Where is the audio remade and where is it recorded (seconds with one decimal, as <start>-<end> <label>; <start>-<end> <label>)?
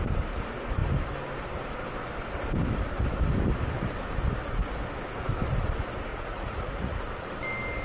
0.0-6.1 recorded; 6.1-7.3 remade; 7.3-7.8 recorded